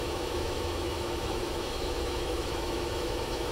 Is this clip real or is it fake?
fake